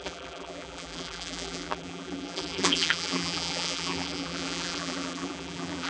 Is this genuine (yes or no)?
no